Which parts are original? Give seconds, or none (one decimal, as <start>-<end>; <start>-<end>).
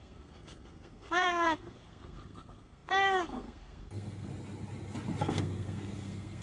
4.3-5.2